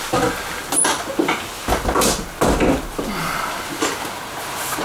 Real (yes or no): yes